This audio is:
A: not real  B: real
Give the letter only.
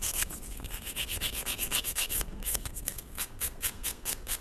A